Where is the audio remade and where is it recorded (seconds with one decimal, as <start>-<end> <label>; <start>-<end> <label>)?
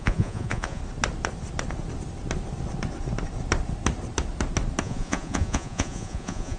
0.0-0.8 remade; 0.8-4.8 recorded; 4.8-6.6 remade